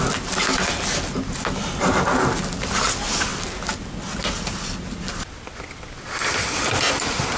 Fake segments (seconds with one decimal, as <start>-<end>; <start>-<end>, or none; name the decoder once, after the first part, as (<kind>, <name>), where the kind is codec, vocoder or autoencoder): none